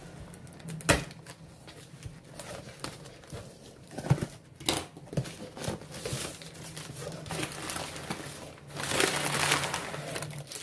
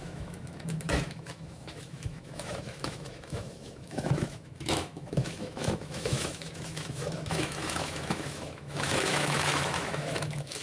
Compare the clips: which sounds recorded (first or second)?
first